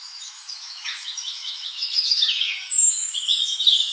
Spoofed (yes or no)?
yes